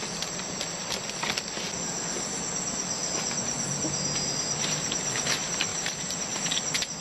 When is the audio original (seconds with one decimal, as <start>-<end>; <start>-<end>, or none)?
0.0-5.7; 6.2-7.0